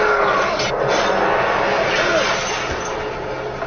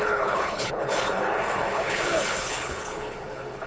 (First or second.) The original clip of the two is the first